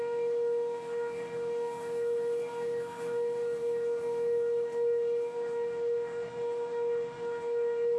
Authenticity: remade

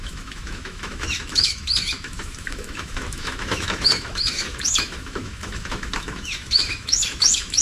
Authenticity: remade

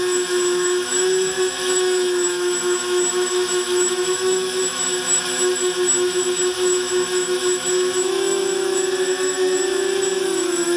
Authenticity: remade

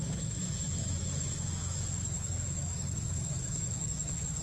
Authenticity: remade